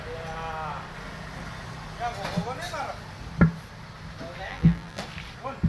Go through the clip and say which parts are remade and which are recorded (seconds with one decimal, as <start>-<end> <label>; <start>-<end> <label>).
0.0-4.5 recorded; 4.5-5.0 remade; 5.0-5.7 recorded

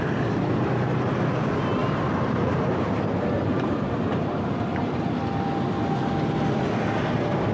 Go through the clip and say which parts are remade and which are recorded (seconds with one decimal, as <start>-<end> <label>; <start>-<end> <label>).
0.0-1.8 recorded; 1.8-5.0 remade; 5.0-7.5 recorded

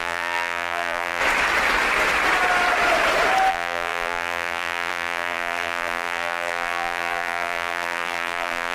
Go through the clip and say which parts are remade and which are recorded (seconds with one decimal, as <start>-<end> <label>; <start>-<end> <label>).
0.0-1.2 remade; 1.2-3.5 recorded; 3.5-8.7 remade

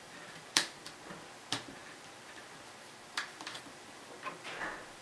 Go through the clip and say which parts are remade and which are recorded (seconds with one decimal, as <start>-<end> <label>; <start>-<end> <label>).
0.0-5.0 remade

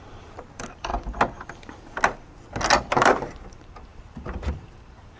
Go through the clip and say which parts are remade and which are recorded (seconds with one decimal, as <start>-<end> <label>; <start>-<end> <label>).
0.0-0.9 remade; 0.9-2.9 recorded; 2.9-5.2 remade

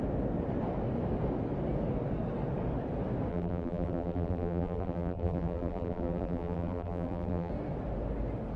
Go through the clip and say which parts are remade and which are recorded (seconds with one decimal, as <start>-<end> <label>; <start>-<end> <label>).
0.0-3.3 recorded; 3.3-7.5 remade; 7.5-8.6 recorded